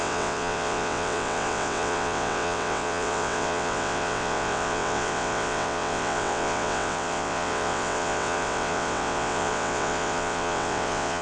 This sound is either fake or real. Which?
fake